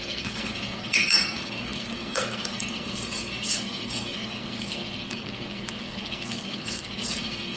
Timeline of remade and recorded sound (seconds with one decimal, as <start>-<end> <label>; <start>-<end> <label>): 0.0-7.6 remade